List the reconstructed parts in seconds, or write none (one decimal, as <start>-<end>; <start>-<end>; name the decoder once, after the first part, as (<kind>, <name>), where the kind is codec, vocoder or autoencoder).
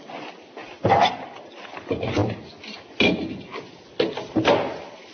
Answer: none